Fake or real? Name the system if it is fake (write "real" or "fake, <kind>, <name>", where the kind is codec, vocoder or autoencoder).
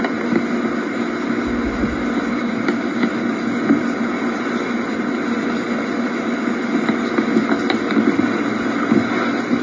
real